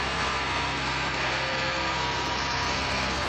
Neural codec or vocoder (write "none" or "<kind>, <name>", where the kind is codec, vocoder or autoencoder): codec, SNAC